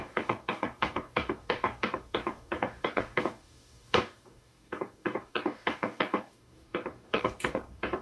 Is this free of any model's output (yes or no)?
no